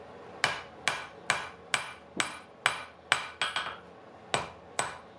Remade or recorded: recorded